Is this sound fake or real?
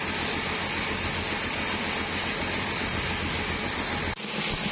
real